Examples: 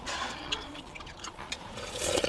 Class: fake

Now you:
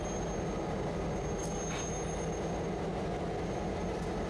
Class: real